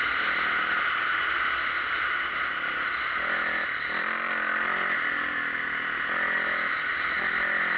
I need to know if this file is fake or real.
real